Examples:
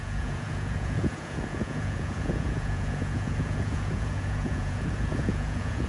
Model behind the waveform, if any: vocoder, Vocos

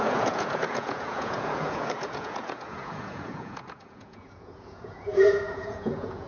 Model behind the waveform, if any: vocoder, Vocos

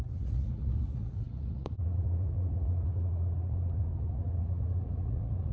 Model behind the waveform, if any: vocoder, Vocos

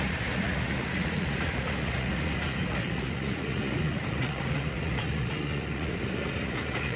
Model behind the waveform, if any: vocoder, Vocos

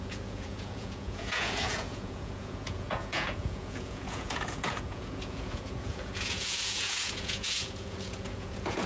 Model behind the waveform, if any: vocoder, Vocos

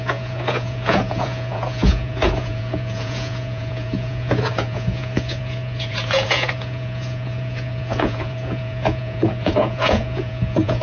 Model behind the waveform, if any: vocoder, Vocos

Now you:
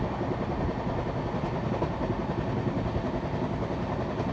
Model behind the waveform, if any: none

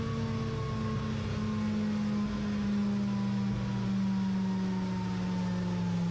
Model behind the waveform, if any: none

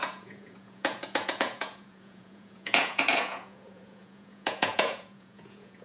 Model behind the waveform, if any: vocoder, Vocos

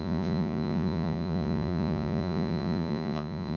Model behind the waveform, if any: vocoder, Vocos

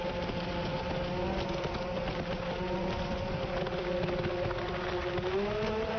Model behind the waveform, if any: none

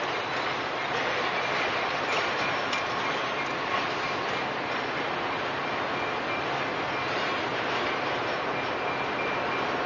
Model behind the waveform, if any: none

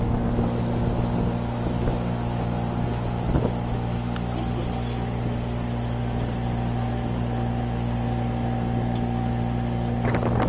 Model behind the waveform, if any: none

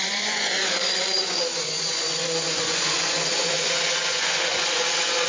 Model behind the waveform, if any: vocoder, Vocos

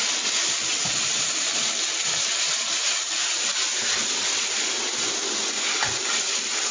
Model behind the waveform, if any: none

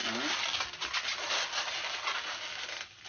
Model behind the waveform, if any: none